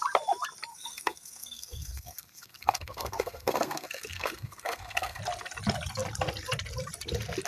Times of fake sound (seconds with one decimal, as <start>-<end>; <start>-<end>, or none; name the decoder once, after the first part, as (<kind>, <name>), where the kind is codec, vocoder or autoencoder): 0.7-5.2 (codec, SNAC)